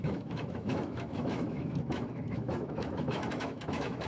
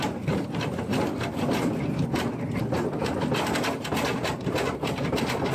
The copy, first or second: first